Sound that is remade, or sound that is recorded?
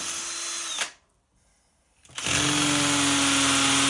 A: recorded